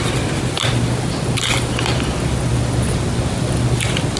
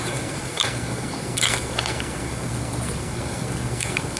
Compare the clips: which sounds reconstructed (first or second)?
second